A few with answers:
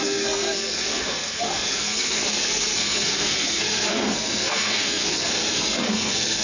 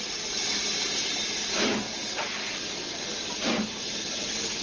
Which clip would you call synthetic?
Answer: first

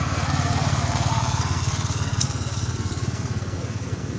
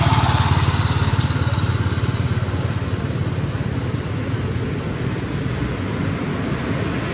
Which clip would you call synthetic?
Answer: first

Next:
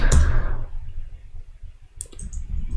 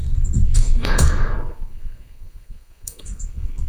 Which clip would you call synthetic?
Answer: second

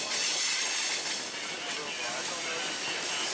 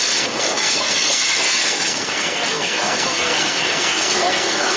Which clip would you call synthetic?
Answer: second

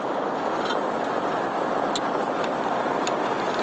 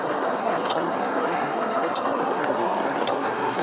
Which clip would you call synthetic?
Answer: second